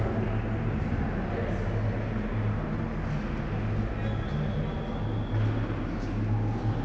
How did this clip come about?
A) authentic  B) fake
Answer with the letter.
A